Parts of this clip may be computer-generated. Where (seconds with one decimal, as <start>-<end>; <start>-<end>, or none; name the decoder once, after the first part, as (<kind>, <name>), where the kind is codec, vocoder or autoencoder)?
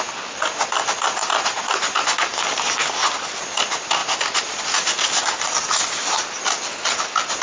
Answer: 1.2-2.2 (vocoder, BigVGAN v2)